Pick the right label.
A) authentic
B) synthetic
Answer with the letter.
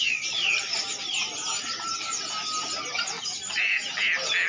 A